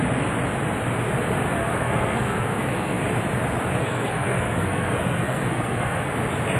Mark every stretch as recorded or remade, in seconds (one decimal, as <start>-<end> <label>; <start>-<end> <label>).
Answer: 0.0-1.6 recorded; 1.6-3.0 remade; 3.0-3.8 recorded; 3.8-6.1 remade; 6.1-6.6 recorded